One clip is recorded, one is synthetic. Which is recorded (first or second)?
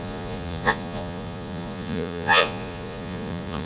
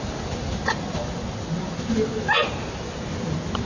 second